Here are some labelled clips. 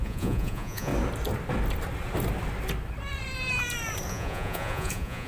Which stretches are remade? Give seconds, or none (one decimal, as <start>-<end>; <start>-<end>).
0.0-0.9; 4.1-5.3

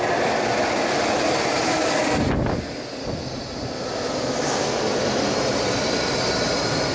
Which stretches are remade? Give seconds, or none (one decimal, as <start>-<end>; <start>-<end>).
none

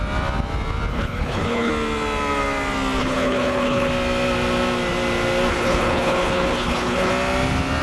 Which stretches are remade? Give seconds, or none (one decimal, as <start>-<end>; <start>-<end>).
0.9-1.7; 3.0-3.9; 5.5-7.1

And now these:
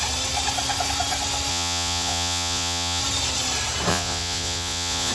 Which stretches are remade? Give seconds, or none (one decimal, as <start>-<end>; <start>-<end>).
1.5-3.0; 3.9-5.1

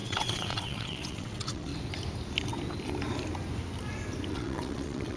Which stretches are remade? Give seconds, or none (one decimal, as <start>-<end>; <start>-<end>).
0.0-1.7; 4.3-5.2